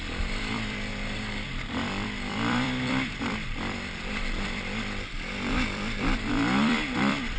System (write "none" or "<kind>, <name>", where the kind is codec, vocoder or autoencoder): vocoder, BigVGAN v2